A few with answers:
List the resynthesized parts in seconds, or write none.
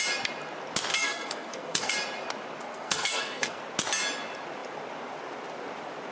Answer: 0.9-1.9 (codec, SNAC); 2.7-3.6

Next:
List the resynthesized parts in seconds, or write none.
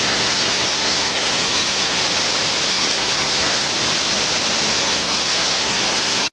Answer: 0.0-2.0 (codec, SNAC); 2.7-3.7; 4.7-6.3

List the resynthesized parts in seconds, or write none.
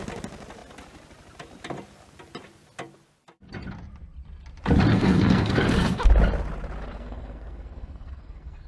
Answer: 4.9-6.0 (codec, SNAC); 6.9-8.7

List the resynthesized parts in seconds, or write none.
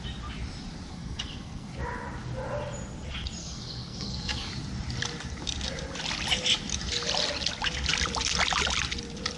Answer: 0.9-1.7 (codec, SNAC); 3.4-4.5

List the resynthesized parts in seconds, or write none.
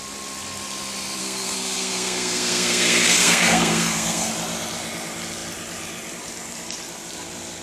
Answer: 1.2-4.3 (codec, SNAC)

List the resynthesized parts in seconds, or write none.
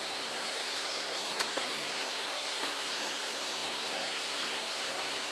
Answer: 0.0-5.3 (codec, SNAC)